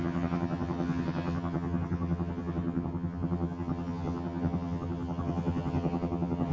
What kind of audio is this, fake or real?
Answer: fake